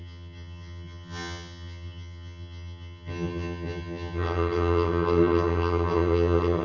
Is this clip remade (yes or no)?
yes